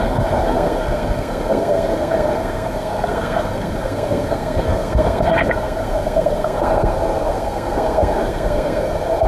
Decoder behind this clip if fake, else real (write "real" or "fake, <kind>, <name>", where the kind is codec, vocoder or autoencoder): fake, codec, SNAC